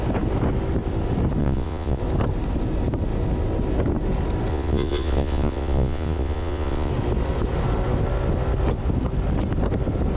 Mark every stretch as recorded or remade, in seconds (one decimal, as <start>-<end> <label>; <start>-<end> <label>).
0.0-1.4 recorded; 1.4-2.0 remade; 2.0-4.5 recorded; 4.5-6.9 remade; 6.9-10.2 recorded